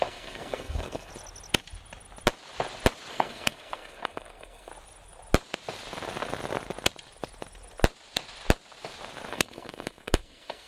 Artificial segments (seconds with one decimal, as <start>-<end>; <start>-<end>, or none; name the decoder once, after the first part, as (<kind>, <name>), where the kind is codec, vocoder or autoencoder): 0.0-1.1 (codec, SNAC); 3.1-4.7; 9.3-10.7